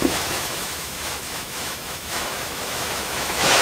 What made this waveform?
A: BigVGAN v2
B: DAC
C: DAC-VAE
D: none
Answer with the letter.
C